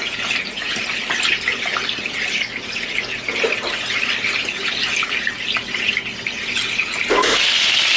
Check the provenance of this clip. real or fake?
real